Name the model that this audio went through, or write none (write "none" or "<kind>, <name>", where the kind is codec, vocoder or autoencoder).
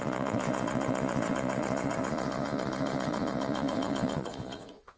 vocoder, Vocos